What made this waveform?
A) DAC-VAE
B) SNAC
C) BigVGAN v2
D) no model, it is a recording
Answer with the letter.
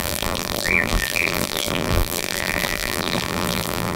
C